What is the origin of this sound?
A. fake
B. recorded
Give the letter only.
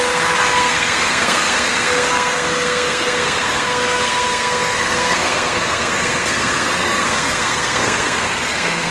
A